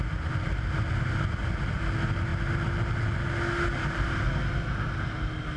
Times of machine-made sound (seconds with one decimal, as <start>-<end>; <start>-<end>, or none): none